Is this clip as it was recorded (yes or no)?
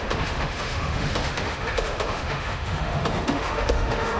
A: no